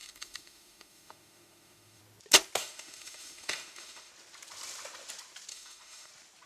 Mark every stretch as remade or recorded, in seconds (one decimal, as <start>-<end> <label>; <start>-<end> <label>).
0.0-2.0 remade; 2.0-2.6 recorded; 2.6-4.1 remade; 4.1-5.5 recorded; 5.5-6.1 remade; 6.1-6.5 recorded